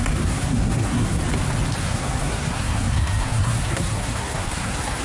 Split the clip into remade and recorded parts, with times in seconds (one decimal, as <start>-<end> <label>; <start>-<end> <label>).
0.0-1.2 remade; 1.2-1.8 recorded; 1.8-5.0 remade